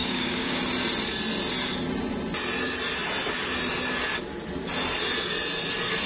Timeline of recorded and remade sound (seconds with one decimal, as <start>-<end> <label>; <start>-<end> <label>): 0.0-0.6 remade; 0.6-6.1 recorded